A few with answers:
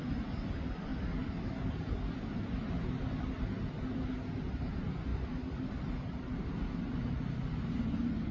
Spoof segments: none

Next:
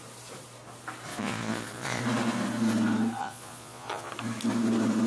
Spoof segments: 1.1-2.0 (vocoder, Vocos); 3.2-4.1

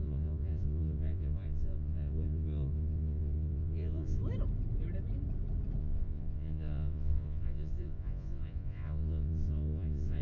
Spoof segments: 0.0-4.2 (vocoder, Vocos); 5.8-10.2

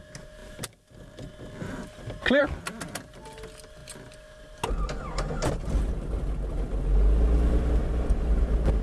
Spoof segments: none

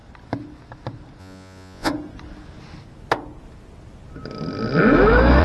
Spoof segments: 1.2-1.9 (vocoder, Vocos)